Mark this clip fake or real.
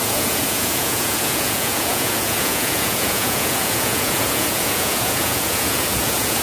fake